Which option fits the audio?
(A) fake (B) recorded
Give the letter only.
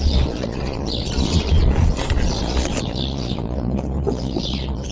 A